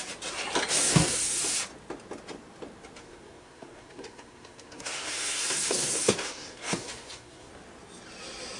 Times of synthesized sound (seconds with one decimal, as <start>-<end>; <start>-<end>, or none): 0.8-1.4; 3.0-7.5